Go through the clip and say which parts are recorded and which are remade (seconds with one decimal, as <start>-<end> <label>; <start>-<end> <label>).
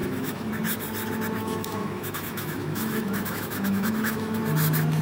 0.0-0.5 remade; 0.5-1.4 recorded; 1.4-4.4 remade; 4.4-5.0 recorded